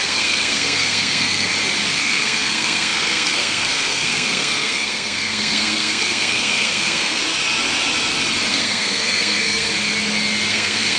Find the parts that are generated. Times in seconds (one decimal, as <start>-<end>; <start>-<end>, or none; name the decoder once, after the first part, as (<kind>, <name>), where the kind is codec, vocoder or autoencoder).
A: 0.0-1.5 (codec, SNAC); 2.0-7.2; 8.5-9.7; 10.5-11.0